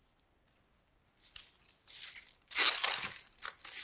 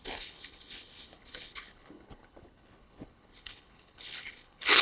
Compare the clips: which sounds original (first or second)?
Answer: first